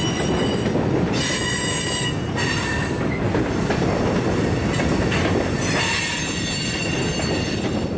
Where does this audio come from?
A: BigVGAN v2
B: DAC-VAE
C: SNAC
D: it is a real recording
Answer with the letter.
D